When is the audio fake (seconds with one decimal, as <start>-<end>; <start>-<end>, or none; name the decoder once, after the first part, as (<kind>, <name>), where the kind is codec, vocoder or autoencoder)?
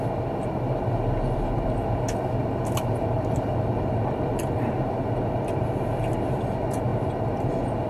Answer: none